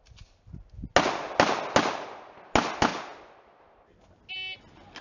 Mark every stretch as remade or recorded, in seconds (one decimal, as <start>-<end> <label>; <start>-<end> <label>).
0.0-5.0 recorded